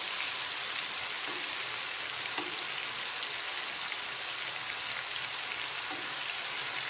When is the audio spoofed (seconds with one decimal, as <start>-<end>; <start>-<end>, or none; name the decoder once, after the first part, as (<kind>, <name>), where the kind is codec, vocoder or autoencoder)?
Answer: none